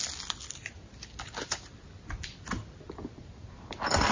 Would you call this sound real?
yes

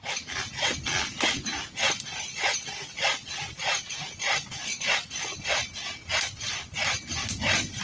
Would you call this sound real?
yes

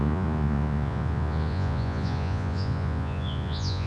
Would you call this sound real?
no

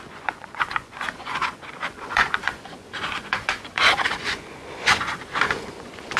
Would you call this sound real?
no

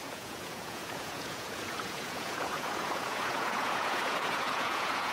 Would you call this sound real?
no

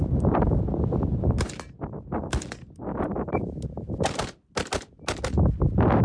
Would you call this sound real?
yes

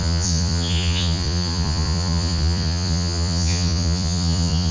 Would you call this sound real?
no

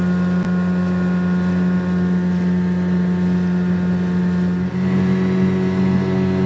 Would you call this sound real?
yes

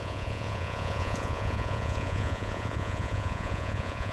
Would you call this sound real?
no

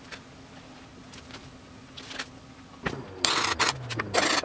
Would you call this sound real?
yes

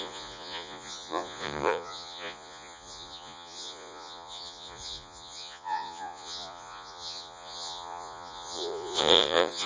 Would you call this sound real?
no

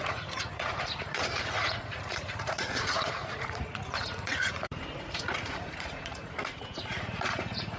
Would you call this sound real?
no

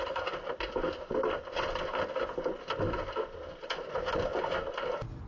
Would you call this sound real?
yes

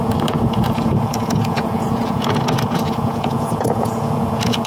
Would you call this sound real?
no